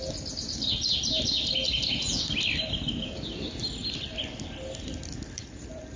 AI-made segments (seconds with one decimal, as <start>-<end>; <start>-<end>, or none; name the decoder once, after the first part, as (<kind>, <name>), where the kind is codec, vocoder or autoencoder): none